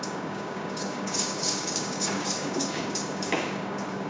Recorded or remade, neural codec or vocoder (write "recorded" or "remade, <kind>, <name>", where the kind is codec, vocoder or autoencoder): remade, codec, DAC